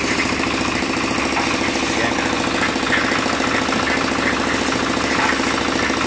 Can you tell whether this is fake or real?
real